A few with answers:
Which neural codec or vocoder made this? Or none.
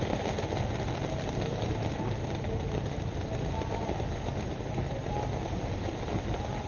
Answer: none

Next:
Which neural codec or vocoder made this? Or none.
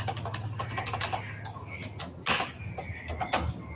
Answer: none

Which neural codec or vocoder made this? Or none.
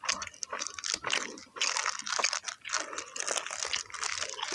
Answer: none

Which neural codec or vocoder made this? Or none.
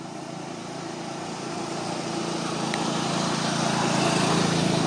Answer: none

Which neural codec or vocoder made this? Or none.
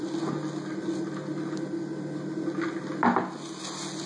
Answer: none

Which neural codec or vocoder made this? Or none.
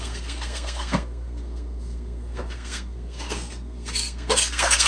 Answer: codec, SNAC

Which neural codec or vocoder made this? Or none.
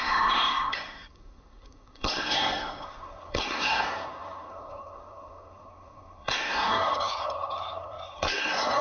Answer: codec, SNAC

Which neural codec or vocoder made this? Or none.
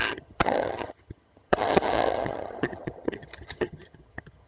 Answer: vocoder, HiFi-GAN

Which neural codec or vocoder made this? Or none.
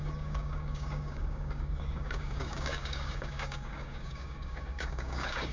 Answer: codec, DAC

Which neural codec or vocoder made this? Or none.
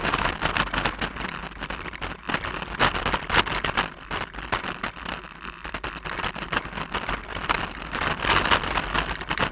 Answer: none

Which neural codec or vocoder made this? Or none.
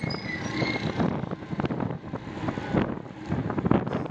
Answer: none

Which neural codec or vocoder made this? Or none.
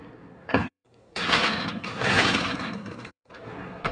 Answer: codec, SNAC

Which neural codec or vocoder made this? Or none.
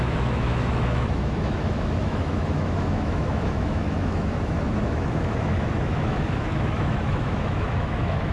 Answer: autoencoder, DAC-VAE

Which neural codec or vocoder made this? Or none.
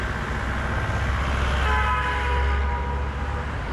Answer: none